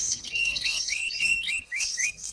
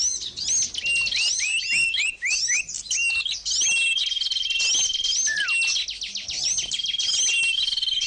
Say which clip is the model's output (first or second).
first